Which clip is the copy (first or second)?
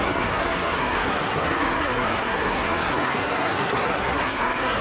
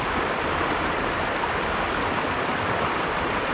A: first